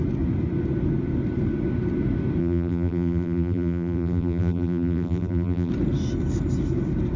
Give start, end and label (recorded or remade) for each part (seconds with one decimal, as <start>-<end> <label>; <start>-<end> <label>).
0.0-2.4 recorded; 2.4-5.7 remade; 5.7-7.2 recorded

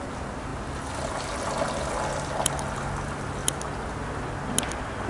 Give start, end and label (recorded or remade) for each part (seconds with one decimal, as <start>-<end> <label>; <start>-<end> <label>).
0.0-5.1 recorded

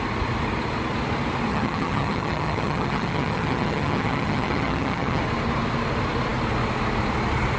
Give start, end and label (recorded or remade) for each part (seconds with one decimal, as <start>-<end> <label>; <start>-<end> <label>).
0.0-1.5 recorded; 1.5-5.2 remade; 5.2-7.6 recorded

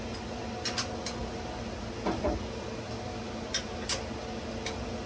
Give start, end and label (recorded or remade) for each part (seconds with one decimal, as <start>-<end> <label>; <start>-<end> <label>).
0.0-5.1 recorded

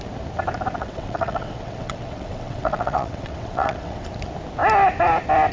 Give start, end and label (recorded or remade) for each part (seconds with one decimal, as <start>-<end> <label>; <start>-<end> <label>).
0.0-0.8 recorded; 0.8-4.1 remade; 4.1-5.5 recorded